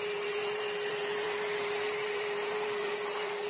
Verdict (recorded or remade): remade